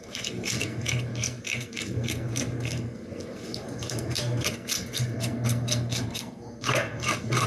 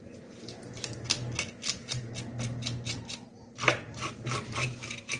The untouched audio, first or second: second